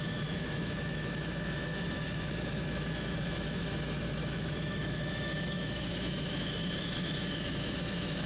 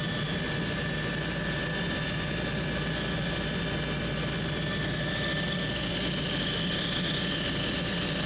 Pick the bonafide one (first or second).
second